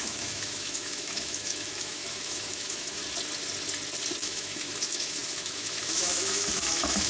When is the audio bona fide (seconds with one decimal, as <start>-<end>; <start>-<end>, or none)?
3.0-4.2